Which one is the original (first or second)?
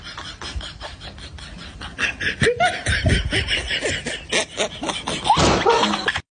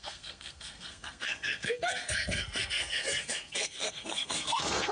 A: first